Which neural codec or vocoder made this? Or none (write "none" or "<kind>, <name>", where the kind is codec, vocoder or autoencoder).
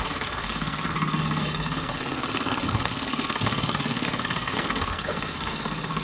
codec, SNAC